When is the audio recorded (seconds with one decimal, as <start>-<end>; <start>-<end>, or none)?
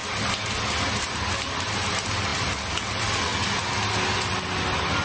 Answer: 0.0-5.0